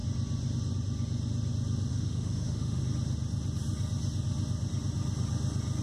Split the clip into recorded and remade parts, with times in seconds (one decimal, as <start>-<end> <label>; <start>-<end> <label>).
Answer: 0.0-1.9 recorded; 1.9-2.8 remade; 2.8-5.8 recorded